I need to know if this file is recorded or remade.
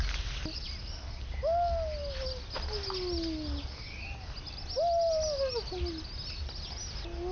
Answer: recorded